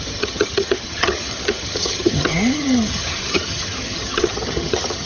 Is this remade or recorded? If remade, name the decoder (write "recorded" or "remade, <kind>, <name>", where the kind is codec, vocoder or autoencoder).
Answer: remade, vocoder, HiFi-GAN